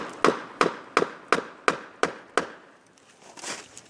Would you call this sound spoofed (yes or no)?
no